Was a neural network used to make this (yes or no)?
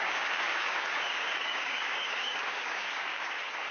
yes